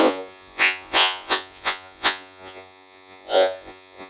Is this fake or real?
fake